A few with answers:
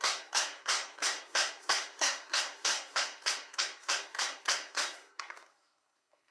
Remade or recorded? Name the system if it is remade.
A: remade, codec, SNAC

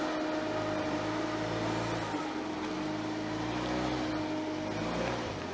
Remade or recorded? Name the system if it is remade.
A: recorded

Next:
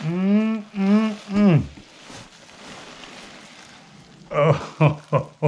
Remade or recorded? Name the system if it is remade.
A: recorded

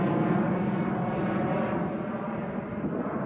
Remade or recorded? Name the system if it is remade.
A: recorded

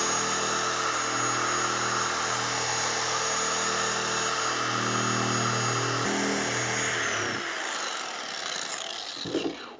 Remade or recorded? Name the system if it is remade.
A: recorded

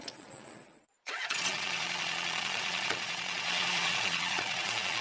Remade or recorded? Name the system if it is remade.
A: remade, vocoder, Vocos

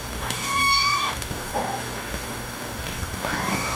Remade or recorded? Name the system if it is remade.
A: remade, codec, DAC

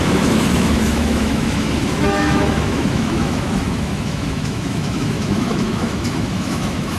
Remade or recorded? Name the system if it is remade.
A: remade, autoencoder, DAC-VAE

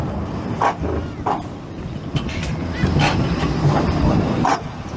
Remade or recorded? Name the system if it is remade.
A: recorded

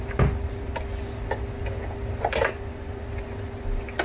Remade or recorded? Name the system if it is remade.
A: recorded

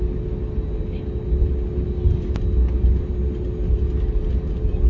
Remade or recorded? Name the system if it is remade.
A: recorded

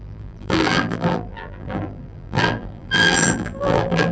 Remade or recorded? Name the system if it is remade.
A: remade, vocoder, BigVGAN v2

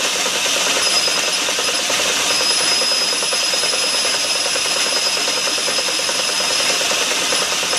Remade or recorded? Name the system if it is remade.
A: recorded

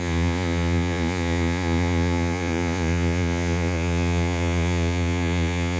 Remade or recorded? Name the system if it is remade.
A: remade, vocoder, Vocos